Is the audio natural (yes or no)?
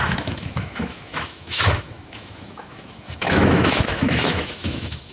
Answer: no